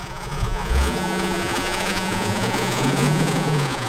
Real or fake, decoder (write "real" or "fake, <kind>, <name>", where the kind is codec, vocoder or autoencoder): fake, vocoder, Vocos